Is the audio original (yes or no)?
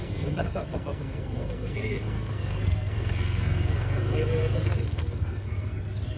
no